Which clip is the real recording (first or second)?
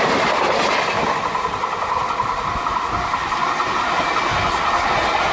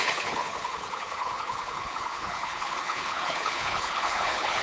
first